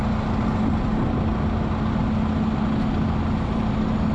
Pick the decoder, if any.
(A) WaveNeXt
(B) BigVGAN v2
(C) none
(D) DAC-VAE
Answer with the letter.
C